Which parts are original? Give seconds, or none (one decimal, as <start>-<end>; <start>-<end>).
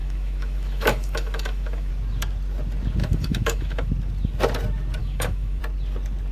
1.9-3.0; 3.9-5.0; 5.6-6.3